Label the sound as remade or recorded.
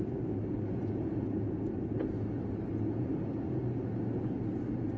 recorded